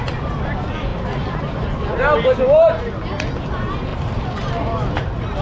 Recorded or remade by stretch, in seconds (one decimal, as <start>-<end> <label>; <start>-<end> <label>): 0.0-5.4 recorded